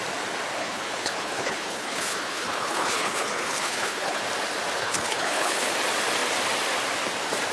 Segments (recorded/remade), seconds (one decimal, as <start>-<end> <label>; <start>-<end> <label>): 0.0-0.6 recorded; 0.6-4.2 remade; 4.2-4.8 recorded; 4.8-5.7 remade; 5.7-7.5 recorded